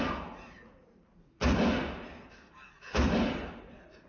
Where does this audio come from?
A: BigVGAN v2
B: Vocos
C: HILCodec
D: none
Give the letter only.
D